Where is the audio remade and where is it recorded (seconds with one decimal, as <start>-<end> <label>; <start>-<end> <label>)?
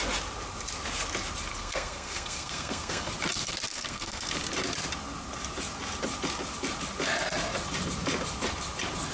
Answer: 0.0-1.5 recorded; 1.5-3.1 remade; 3.1-3.7 recorded; 3.7-4.3 remade; 4.3-9.1 recorded